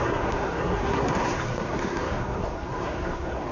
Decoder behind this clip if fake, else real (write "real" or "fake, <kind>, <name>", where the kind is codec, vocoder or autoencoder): fake, codec, SNAC